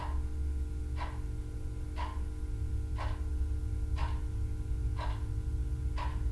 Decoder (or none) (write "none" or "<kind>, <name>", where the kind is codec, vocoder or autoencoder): none